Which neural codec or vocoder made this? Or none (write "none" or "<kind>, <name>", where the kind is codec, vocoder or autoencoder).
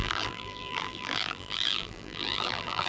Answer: vocoder, BigVGAN v2